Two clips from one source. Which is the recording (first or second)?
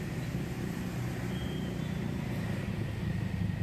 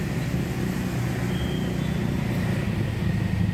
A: second